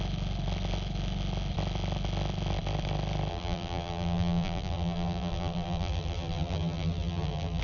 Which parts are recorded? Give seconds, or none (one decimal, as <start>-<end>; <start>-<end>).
0.0-3.3